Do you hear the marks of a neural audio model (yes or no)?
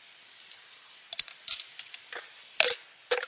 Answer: no